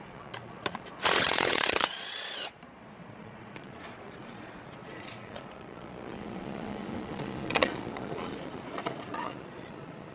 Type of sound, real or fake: fake